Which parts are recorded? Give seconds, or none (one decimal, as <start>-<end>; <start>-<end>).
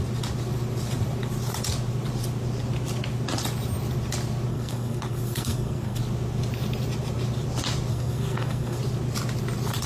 0.0-4.5; 6.0-7.9; 8.8-9.9